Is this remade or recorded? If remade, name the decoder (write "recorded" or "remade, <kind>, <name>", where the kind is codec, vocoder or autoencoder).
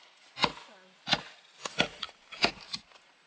recorded